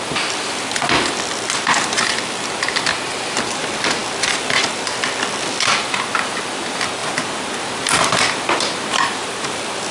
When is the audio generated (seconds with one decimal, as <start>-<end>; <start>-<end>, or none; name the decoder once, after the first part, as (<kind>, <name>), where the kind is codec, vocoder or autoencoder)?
0.0-9.9 (vocoder, BigVGAN v2)